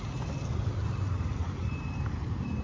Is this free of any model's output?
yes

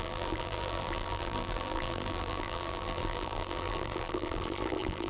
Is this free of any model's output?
no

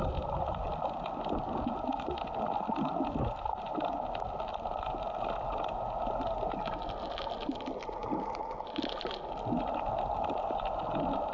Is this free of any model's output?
yes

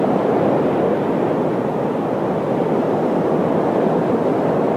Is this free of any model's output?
yes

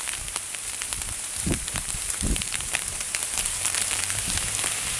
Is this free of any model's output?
no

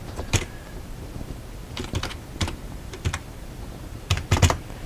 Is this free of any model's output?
no